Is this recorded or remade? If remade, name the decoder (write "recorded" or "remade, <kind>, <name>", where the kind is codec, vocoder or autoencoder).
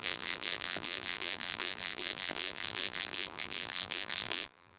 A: remade, vocoder, BigVGAN v2